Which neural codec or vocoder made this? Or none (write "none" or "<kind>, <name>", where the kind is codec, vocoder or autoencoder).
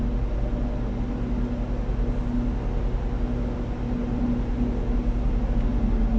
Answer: none